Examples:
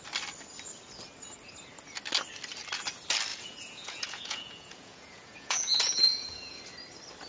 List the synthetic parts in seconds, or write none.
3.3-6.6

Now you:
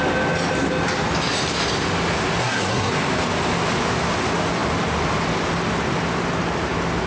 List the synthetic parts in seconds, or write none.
2.4-2.9

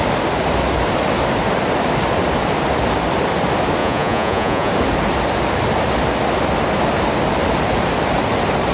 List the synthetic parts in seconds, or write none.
3.8-4.7

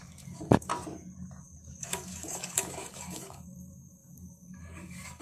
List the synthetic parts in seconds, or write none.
0.0-0.7; 1.4-5.2

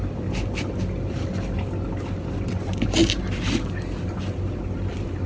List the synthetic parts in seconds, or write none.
none

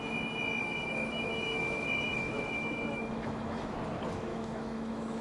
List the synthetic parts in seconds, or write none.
0.6-3.7; 4.3-5.2